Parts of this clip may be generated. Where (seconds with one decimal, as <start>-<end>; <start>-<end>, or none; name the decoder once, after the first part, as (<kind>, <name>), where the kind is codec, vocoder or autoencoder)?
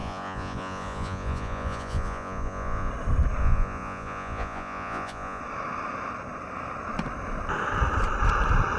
0.0-2.9 (vocoder, Vocos); 3.4-5.4